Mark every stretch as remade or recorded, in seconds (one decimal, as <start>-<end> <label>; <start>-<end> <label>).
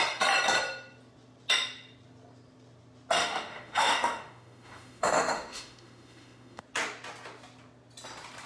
0.0-3.2 recorded; 3.2-6.6 remade; 6.6-8.5 recorded